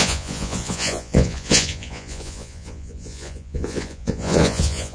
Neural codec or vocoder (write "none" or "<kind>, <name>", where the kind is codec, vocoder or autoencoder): vocoder, Vocos